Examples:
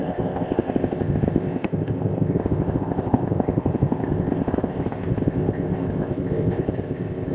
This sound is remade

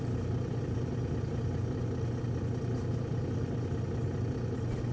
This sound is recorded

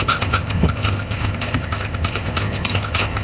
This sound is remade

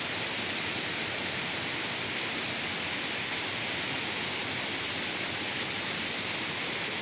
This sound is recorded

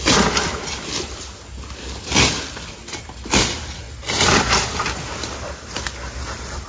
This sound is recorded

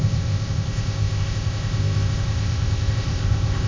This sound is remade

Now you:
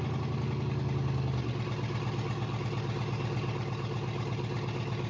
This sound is recorded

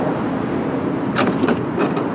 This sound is recorded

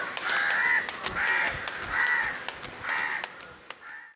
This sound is recorded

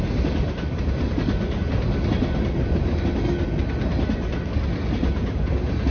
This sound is recorded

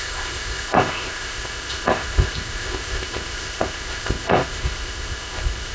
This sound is remade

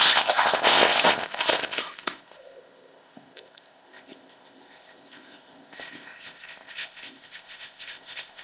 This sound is remade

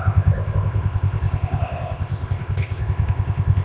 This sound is remade